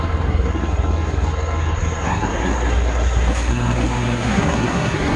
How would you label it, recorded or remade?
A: remade